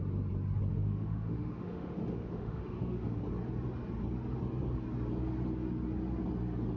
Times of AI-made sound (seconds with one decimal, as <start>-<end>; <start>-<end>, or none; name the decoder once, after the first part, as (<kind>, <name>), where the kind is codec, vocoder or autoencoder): 0.7-3.2 (autoencoder, DAC-VAE)